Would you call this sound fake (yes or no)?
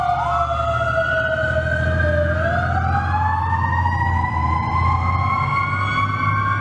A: no